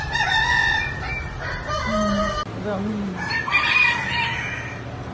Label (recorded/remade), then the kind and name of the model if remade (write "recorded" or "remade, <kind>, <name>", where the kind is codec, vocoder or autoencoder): recorded